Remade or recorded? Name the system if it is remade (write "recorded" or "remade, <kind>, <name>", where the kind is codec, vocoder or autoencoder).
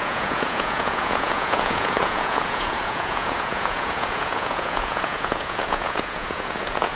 remade, vocoder, Vocos